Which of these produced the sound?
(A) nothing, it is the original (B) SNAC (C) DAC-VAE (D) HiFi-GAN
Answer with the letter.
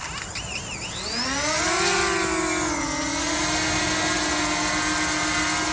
A